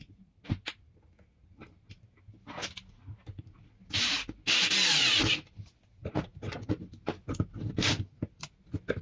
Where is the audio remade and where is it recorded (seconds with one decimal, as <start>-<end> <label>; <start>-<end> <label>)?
0.0-9.0 recorded